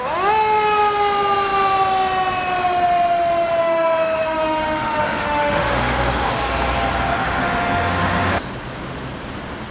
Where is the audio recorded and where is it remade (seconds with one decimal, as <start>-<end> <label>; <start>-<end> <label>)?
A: 0.0-3.6 recorded; 3.6-6.3 remade; 6.3-7.1 recorded; 7.1-8.3 remade; 8.3-9.7 recorded